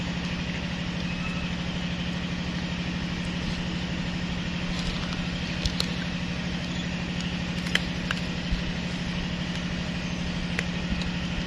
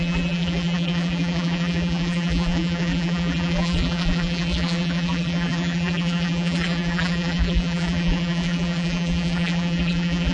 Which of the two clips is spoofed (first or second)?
second